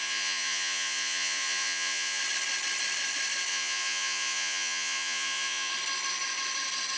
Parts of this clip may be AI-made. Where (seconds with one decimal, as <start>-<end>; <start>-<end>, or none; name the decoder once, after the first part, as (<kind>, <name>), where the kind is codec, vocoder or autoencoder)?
0.0-2.2 (vocoder, Vocos); 3.5-5.7